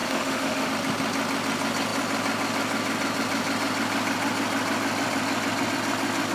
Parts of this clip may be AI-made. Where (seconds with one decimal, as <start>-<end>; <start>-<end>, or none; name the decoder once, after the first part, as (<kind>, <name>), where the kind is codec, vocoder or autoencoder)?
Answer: 0.0-0.7 (autoencoder, DAC-VAE)